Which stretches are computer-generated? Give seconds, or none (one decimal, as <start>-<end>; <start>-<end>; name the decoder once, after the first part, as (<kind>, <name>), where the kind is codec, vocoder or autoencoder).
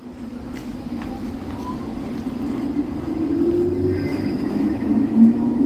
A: 0.6-1.1 (autoencoder, DAC-VAE); 4.1-5.7